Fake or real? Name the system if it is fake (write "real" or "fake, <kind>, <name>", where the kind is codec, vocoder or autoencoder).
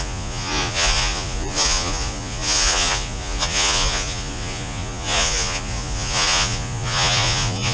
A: fake, vocoder, Vocos